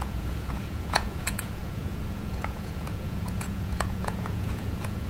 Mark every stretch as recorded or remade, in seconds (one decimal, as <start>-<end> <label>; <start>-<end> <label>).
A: 0.0-5.1 remade